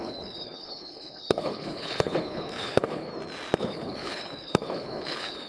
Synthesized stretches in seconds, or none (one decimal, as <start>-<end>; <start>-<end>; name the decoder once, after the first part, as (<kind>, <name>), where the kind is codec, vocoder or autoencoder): 0.0-3.1 (codec, HILCodec); 3.6-5.5